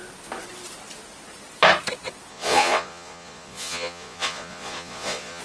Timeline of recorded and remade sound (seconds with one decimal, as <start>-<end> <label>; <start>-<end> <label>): 0.0-2.3 recorded; 2.3-5.4 remade